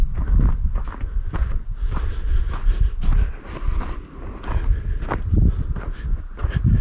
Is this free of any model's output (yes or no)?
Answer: yes